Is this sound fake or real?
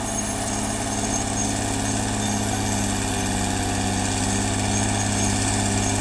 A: real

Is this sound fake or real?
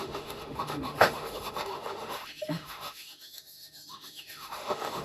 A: fake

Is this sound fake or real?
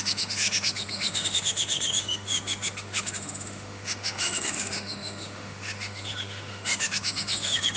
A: fake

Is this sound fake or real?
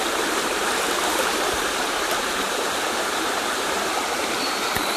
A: fake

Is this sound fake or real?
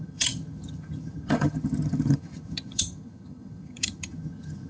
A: fake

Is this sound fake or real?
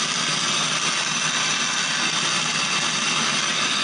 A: real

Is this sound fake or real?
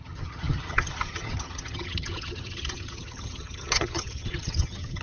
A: fake